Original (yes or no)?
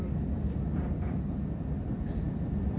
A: yes